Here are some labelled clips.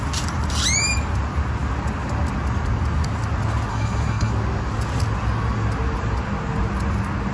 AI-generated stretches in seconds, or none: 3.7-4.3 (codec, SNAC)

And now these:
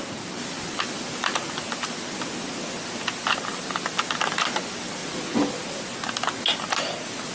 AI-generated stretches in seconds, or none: none

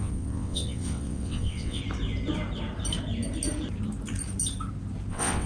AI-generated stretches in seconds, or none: 0.0-1.8 (vocoder, WaveNeXt); 5.1-5.5

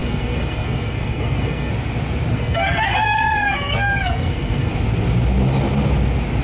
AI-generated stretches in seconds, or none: 0.0-1.7 (codec, SNAC); 2.3-4.7